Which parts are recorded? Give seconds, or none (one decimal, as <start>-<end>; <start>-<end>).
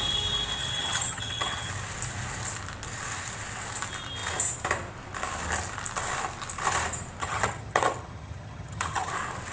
0.0-0.6; 1.7-7.2; 9.1-9.5